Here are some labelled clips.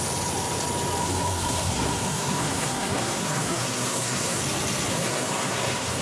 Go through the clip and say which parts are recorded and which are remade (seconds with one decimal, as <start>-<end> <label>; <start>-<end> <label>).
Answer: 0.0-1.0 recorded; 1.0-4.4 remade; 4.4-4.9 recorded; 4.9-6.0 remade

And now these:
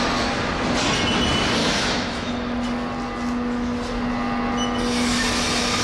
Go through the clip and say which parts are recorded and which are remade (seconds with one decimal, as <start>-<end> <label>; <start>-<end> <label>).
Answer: 0.0-1.6 recorded; 1.6-2.3 remade; 2.3-5.8 recorded

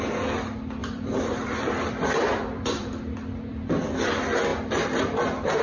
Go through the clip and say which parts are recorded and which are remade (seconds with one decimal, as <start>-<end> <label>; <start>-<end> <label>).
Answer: 0.0-0.8 recorded; 0.8-3.7 remade; 3.7-5.6 recorded